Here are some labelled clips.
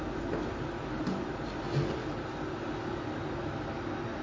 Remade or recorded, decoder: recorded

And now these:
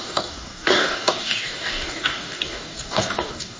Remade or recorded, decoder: remade, codec, DAC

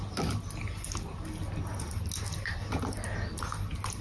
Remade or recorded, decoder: recorded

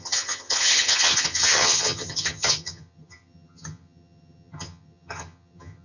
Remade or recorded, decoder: remade, vocoder, HiFi-GAN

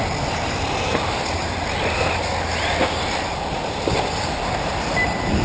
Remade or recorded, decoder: recorded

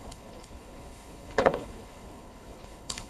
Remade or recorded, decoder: remade, codec, HILCodec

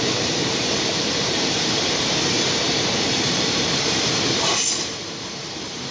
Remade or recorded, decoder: remade, vocoder, BigVGAN v2